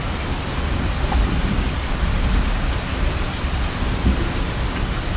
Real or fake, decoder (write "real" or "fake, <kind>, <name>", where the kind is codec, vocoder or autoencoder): real